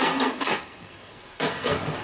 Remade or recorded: remade